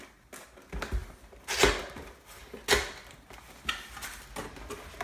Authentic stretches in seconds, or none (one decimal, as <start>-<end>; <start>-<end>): 0.0-5.0